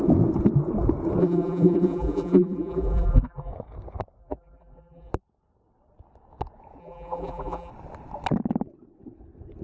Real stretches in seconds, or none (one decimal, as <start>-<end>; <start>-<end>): 0.0-1.2; 3.5-4.2; 5.1-6.8; 7.7-9.6